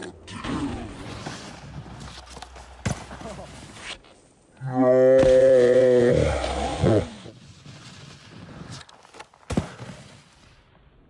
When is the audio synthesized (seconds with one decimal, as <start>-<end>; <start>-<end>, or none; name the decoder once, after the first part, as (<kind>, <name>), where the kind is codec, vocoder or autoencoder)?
0.0-1.5 (vocoder, Vocos); 5.4-6.1; 6.7-8.7

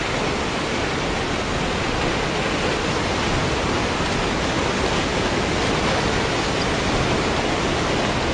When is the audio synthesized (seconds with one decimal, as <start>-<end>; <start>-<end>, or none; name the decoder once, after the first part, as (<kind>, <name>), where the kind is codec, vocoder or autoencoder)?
none

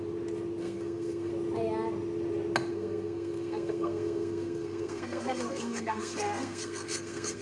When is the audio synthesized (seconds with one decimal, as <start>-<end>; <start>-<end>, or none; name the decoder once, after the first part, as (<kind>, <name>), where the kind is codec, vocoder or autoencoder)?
0.6-1.3 (codec, SNAC); 2.7-7.4

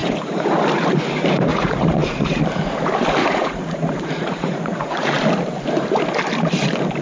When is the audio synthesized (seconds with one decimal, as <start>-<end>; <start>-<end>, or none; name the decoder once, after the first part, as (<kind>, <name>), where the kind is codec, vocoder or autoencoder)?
0.0-0.6 (vocoder, Vocos); 1.5-2.4; 3.2-5.1

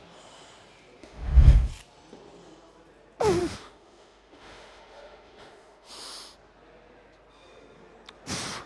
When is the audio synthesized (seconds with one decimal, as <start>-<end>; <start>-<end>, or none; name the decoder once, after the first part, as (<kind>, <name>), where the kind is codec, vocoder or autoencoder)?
1.0-1.7 (autoencoder, DAC-VAE); 3.4-5.9